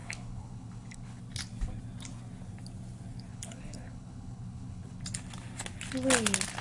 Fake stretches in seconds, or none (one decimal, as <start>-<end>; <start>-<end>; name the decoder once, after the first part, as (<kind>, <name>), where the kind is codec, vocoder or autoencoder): 0.0-1.2 (codec, HILCodec); 3.3-5.0